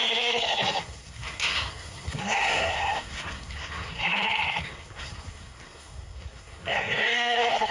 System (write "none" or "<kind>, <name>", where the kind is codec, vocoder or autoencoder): codec, SNAC